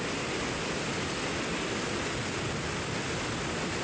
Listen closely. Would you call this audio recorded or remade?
recorded